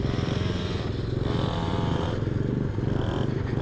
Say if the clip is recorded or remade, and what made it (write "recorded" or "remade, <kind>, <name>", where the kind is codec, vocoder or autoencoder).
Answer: remade, vocoder, BigVGAN v2